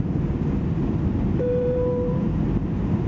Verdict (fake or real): fake